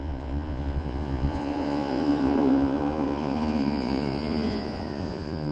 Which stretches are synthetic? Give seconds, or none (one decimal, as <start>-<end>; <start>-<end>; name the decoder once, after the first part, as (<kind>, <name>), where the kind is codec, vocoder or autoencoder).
0.0-5.5 (vocoder, Vocos)